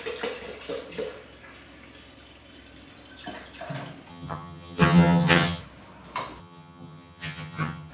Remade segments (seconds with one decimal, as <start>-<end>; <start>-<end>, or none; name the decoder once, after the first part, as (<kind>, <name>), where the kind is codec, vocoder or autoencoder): 4.1-5.6 (vocoder, HiFi-GAN); 6.4-7.9